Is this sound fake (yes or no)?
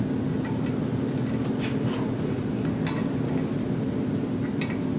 no